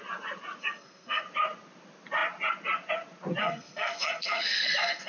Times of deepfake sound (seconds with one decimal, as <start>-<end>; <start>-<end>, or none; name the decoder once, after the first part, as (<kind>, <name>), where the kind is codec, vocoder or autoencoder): 0.6-1.2 (codec, SNAC); 3.4-5.1

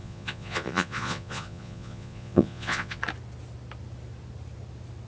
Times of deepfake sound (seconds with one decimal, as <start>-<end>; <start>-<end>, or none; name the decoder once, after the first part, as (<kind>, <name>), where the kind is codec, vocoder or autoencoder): 0.0-3.0 (vocoder, Vocos)

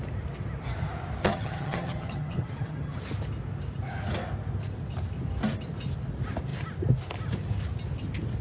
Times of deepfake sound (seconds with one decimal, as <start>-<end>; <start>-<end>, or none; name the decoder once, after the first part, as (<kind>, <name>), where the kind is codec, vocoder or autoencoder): 1.2-3.0 (vocoder, HiFi-GAN)

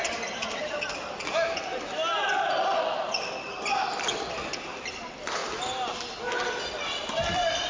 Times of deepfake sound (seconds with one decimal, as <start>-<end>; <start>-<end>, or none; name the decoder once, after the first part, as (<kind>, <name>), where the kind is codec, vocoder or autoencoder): 0.0-5.4 (vocoder, BigVGAN v2); 7.3-7.7

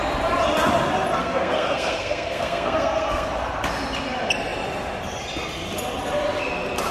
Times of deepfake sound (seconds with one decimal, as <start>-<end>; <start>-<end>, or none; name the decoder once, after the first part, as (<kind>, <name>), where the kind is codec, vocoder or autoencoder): 1.2-3.3 (codec, SNAC)